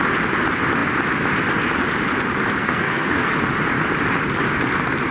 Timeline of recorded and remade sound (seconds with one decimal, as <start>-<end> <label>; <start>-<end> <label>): 0.0-2.6 recorded; 2.6-3.3 remade; 3.3-5.1 recorded